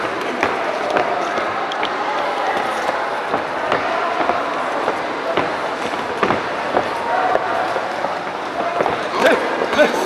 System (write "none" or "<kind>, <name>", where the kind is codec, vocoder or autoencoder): none